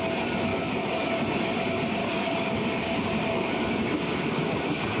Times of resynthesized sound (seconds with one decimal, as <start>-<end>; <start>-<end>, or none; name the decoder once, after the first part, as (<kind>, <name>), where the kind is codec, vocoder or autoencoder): 0.5-1.1 (codec, DAC); 2.0-5.0